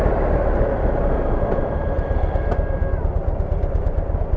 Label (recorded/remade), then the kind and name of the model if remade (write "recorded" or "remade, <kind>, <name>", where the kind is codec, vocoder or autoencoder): recorded